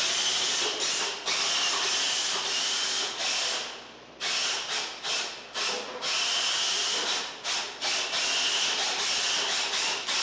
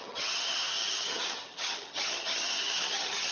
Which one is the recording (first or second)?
first